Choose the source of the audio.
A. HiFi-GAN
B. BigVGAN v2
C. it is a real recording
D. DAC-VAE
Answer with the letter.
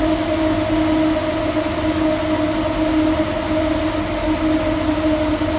C